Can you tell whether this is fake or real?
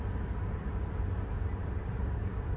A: fake